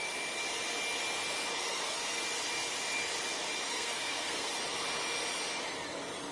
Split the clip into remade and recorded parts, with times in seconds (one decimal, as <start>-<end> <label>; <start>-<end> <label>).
0.0-1.6 recorded; 1.6-2.2 remade; 2.2-3.7 recorded; 3.7-4.5 remade; 4.5-6.3 recorded